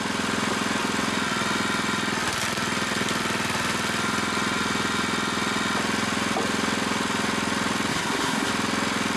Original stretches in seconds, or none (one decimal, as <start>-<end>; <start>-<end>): 0.0-7.9; 8.5-9.2